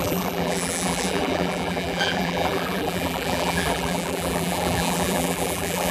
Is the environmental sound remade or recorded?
remade